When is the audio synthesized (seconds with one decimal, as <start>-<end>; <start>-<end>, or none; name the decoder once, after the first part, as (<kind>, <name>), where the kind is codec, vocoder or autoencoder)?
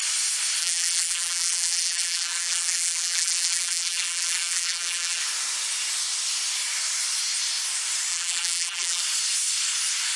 0.6-5.2 (vocoder, BigVGAN v2); 8.1-9.0